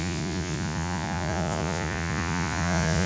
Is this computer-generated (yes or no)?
yes